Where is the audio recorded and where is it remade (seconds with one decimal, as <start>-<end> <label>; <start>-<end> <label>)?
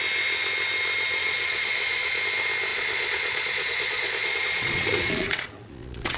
0.0-1.2 recorded; 1.2-2.2 remade; 2.2-2.7 recorded; 2.7-6.2 remade